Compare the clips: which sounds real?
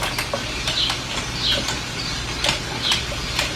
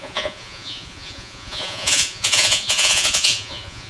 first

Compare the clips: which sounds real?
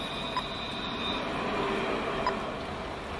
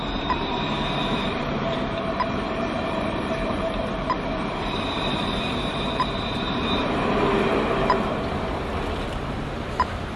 first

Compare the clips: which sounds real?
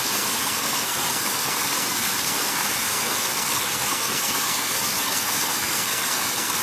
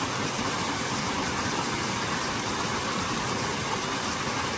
second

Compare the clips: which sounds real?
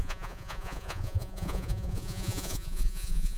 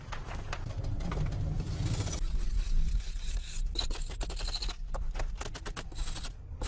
second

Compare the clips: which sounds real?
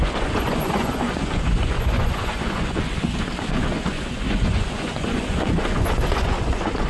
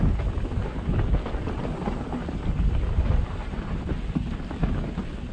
second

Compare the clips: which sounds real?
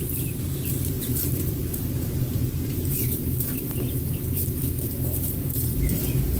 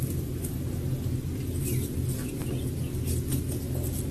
second